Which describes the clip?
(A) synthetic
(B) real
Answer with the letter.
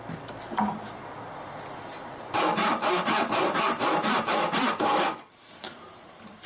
B